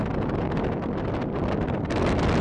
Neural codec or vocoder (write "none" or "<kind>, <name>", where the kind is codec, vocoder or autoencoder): none